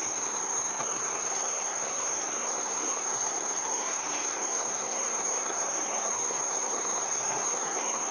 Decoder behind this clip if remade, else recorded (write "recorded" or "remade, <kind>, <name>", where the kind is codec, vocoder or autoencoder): remade, codec, SNAC